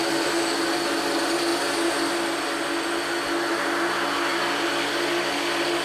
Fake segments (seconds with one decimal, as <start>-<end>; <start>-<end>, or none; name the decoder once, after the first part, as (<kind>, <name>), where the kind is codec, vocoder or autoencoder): none